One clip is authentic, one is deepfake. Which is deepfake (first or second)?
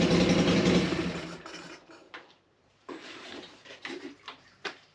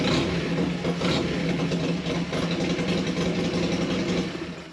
first